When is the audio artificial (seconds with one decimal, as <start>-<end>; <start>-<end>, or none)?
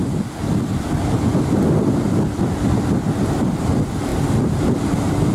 3.2-4.1